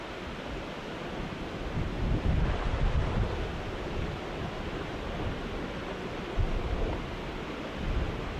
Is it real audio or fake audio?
real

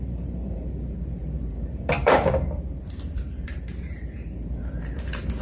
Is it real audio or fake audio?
fake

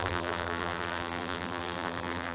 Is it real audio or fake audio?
fake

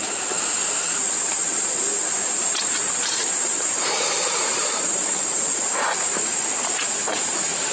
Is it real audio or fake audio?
fake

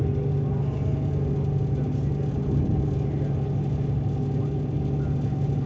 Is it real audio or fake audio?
real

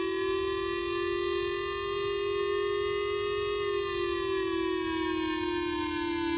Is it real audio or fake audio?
real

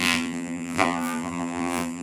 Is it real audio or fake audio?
fake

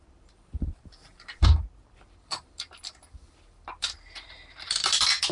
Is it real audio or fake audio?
fake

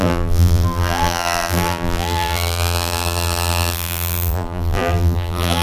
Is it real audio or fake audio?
fake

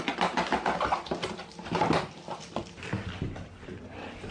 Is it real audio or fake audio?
real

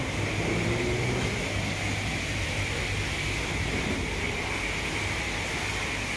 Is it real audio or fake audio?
real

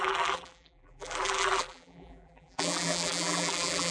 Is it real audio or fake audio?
fake